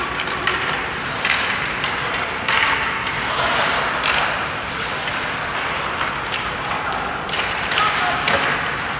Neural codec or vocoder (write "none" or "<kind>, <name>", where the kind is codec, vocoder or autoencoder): vocoder, BigVGAN v2